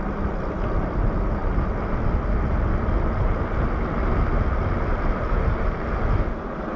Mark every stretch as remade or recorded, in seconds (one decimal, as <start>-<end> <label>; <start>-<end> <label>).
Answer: 0.0-6.8 recorded